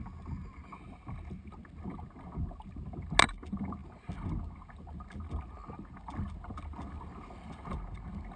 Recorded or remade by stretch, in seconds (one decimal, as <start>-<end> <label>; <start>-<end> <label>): 0.0-8.4 recorded